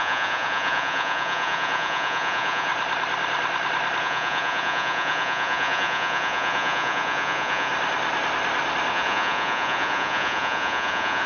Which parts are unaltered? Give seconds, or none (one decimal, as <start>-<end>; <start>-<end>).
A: 2.7-4.0; 7.7-8.9